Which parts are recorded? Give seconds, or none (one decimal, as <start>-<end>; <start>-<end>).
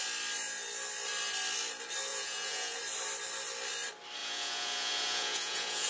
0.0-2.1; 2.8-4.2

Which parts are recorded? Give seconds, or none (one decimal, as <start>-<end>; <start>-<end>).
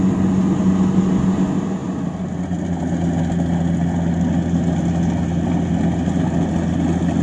0.0-7.2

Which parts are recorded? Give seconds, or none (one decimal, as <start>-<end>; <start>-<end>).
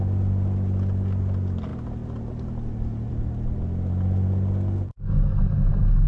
0.0-4.9; 5.4-6.1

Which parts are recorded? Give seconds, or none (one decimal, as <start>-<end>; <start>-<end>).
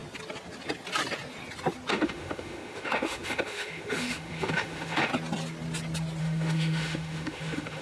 0.0-1.9; 5.1-6.2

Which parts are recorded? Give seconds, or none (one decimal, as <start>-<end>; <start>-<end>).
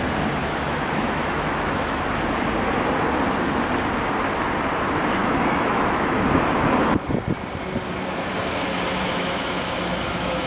0.0-0.4; 2.0-5.2; 6.2-9.1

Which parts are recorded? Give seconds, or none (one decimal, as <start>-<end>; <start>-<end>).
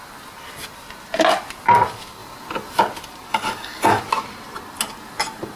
0.0-3.3; 4.0-5.6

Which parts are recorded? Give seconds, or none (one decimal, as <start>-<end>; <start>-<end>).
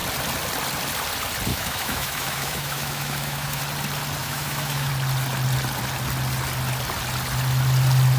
0.0-1.5; 3.6-4.2; 4.9-8.2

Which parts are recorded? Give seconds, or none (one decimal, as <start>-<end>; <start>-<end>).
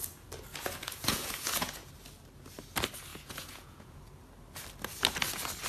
0.0-0.5; 1.9-3.1; 4.0-5.7